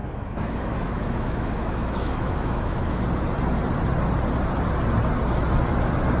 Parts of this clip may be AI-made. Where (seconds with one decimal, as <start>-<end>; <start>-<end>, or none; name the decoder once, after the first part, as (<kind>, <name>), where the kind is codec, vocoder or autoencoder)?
0.0-3.0 (autoencoder, DAC-VAE)